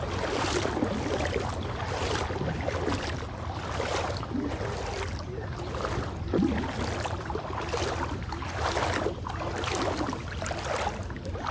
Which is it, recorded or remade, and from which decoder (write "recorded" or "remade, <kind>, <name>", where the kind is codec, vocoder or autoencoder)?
recorded